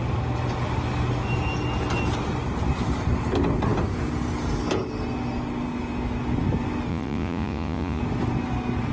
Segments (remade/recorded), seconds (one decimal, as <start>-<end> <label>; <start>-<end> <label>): 0.0-6.9 recorded; 6.9-8.0 remade; 8.0-8.9 recorded